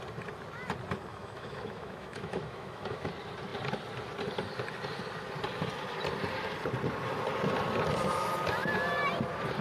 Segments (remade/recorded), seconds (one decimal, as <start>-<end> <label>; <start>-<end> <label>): 0.0-1.1 recorded; 1.1-3.1 remade; 3.1-9.6 recorded